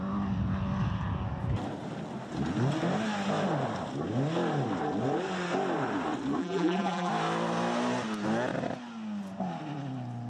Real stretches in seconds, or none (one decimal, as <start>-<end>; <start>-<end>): 0.0-6.4; 7.1-10.3